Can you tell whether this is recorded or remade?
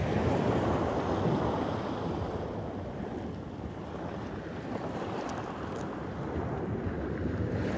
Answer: recorded